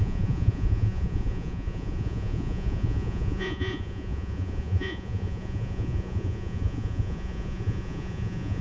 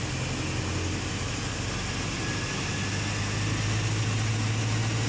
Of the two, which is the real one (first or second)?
second